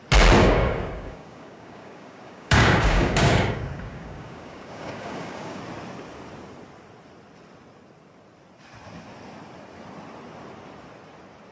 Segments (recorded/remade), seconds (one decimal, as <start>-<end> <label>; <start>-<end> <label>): 0.0-0.4 recorded; 0.4-5.6 remade; 5.6-11.5 recorded